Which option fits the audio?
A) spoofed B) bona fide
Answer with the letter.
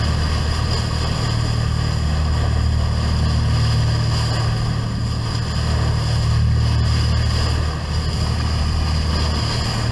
B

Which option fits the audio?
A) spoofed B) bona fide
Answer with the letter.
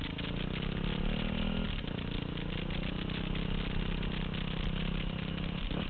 B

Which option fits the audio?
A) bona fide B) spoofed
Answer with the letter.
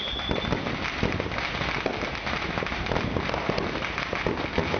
A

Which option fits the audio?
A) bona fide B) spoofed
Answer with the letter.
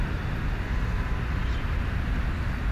A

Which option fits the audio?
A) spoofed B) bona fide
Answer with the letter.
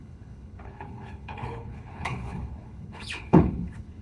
A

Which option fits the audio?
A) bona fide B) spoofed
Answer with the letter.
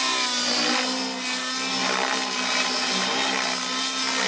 A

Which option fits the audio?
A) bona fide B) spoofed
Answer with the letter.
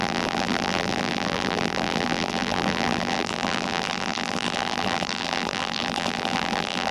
B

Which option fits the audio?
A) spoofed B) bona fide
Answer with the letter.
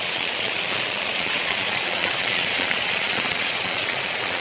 A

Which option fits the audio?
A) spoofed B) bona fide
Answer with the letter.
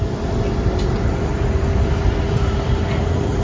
B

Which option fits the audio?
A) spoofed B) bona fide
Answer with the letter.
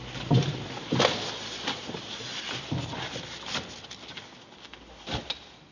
B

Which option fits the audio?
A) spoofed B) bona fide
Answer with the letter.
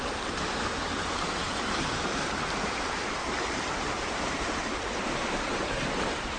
A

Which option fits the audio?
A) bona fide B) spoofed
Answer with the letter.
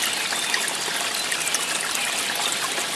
A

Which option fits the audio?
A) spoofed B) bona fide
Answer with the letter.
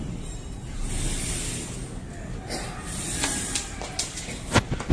B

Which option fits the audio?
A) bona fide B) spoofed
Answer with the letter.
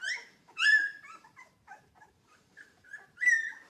B